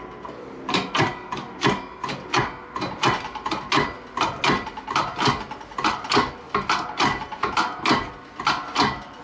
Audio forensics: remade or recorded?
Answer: recorded